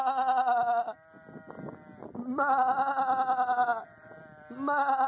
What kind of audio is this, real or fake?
real